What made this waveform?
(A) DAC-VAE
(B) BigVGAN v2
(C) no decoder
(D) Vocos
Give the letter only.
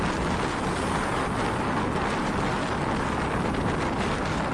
C